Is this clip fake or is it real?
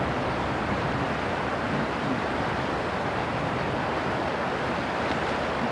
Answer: real